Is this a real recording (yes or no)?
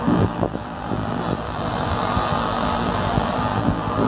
no